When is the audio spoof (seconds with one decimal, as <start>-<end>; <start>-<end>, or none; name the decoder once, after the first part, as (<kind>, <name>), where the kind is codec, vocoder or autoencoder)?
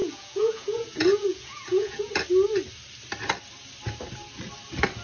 0.0-2.1 (vocoder, Vocos)